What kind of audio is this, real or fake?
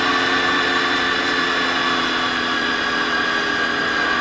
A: real